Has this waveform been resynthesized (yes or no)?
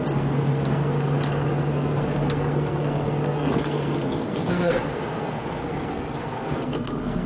yes